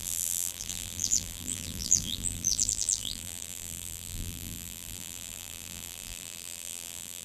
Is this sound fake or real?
fake